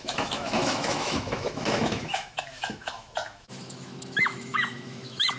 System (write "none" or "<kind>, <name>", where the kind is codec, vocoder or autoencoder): autoencoder, DAC-VAE